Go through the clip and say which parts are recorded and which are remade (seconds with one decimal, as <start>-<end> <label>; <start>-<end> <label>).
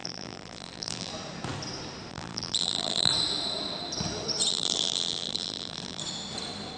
0.0-1.1 remade; 1.1-2.1 recorded; 2.1-3.1 remade; 3.1-4.5 recorded; 4.5-6.0 remade; 6.0-6.8 recorded